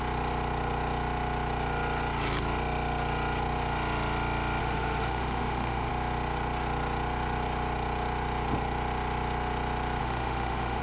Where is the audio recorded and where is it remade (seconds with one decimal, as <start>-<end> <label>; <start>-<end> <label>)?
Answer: 0.0-4.6 recorded; 4.6-5.9 remade; 5.9-10.0 recorded; 10.0-10.8 remade